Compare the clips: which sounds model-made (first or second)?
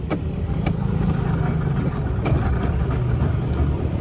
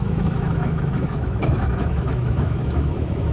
second